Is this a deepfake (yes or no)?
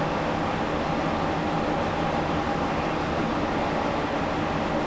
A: no